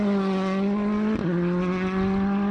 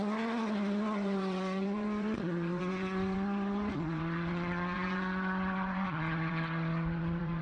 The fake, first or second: second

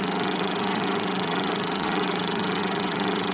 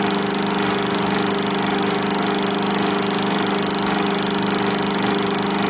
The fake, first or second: first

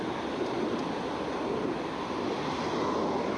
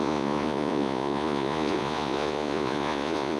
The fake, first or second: second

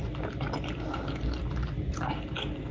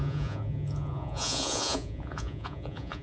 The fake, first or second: second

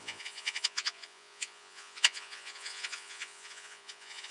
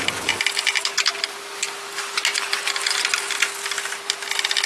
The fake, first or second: first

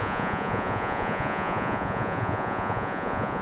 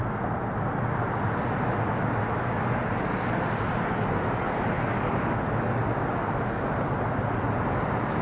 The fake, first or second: first